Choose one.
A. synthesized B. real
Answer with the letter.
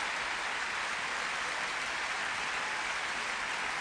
B